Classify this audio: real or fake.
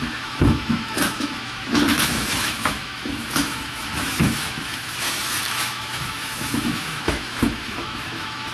fake